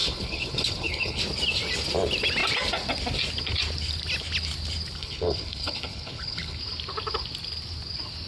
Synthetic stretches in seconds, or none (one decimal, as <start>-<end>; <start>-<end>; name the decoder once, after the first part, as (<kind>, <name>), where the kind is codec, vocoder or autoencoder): 0.0-1.2 (codec, HILCodec); 5.0-6.6